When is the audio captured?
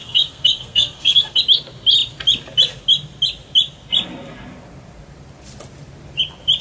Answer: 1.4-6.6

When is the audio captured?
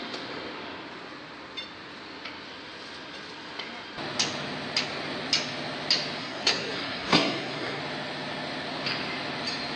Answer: 0.0-6.2; 7.8-9.8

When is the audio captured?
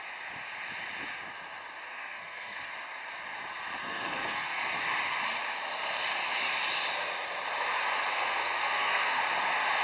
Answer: 0.0-1.9; 2.7-3.8; 4.6-8.1; 9.2-9.8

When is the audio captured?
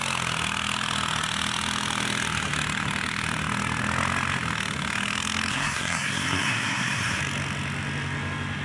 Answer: 0.0-5.5; 7.2-8.6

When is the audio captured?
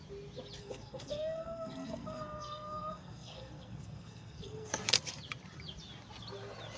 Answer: 0.0-0.6; 4.7-6.8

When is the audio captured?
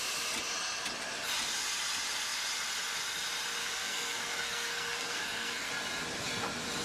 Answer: 0.0-3.6; 5.7-6.8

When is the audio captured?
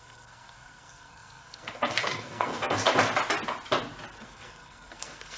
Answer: 2.8-4.2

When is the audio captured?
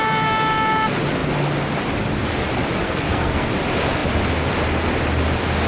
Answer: 0.0-2.8; 3.5-5.7